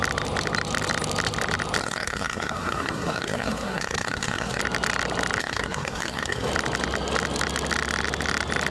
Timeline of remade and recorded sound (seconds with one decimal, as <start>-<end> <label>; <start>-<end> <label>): 0.0-1.8 recorded; 1.8-4.6 remade; 4.6-5.4 recorded; 5.4-6.5 remade; 6.5-8.7 recorded